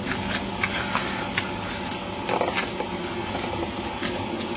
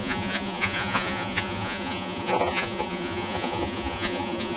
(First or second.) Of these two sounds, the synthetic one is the second